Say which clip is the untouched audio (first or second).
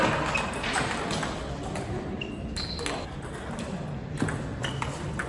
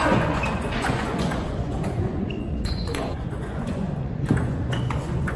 first